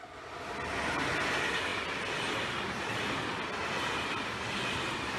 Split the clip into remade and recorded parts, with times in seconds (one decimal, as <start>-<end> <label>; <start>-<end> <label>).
0.0-5.2 recorded